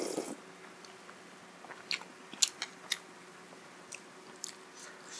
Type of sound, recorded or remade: recorded